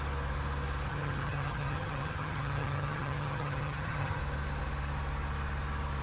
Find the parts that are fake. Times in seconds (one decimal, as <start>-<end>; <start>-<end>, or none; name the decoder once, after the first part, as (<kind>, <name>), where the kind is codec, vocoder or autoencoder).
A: 0.9-4.2 (vocoder, HiFi-GAN)